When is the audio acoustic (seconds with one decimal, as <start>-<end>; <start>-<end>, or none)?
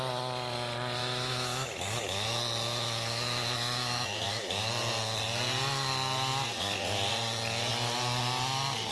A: 0.0-1.0; 4.7-8.9